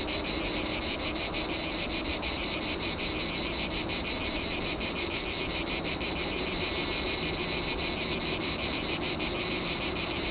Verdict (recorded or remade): recorded